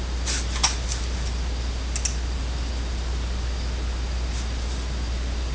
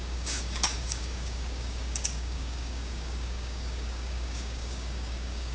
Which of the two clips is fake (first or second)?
second